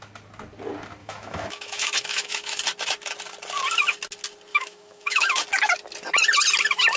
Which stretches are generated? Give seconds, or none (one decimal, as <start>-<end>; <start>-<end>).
1.0-2.6; 4.5-5.4

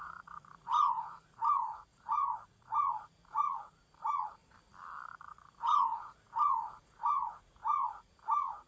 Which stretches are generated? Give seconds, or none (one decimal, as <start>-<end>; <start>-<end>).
0.0-4.4; 5.1-8.7

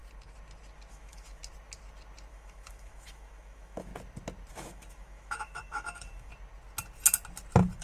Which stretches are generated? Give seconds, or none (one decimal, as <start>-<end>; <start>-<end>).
0.9-1.4; 2.3-3.9; 4.5-6.3

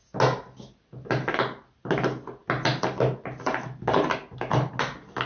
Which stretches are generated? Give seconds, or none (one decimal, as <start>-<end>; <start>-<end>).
none

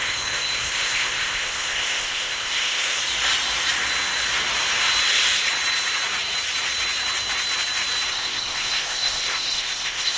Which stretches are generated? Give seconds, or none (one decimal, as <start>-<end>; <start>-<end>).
0.0-3.0; 8.1-10.2

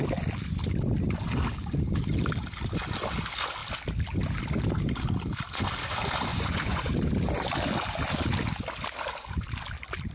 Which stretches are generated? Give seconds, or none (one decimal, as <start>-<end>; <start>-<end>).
6.3-6.9

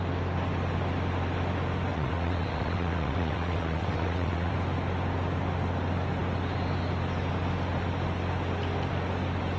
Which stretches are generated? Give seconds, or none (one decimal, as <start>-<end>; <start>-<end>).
1.9-4.5

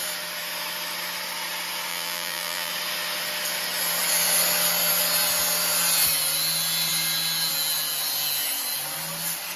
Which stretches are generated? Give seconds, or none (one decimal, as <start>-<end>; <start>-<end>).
1.9-2.7